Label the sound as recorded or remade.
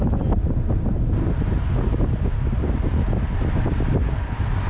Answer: recorded